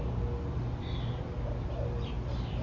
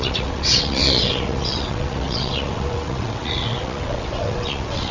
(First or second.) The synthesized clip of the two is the second